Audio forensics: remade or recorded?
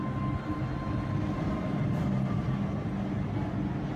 recorded